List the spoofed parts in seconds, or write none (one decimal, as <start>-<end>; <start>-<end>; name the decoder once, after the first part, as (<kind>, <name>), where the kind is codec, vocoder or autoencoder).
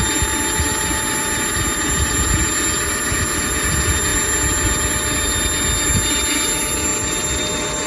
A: none